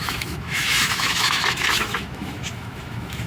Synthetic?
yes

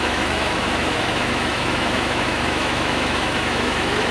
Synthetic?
yes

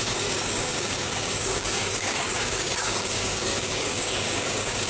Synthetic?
yes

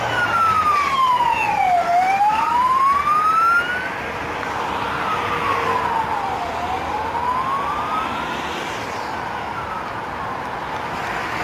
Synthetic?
no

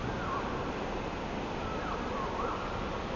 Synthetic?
no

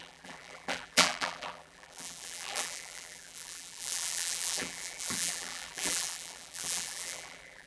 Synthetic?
yes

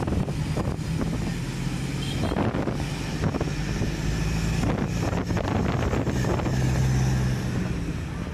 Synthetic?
no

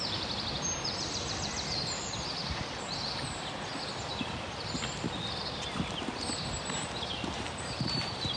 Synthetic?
no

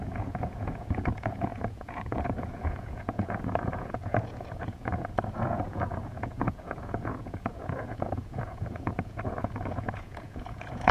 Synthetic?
yes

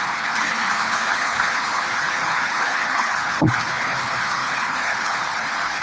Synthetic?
yes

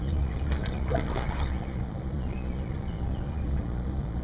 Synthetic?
yes